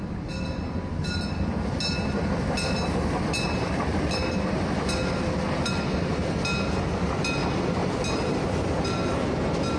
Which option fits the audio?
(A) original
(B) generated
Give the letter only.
A